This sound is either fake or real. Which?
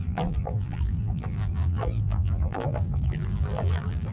fake